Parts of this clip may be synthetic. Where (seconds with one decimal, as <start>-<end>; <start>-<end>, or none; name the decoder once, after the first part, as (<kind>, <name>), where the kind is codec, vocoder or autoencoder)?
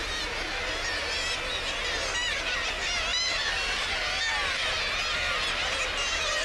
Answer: 3.1-3.9 (vocoder, BigVGAN v2)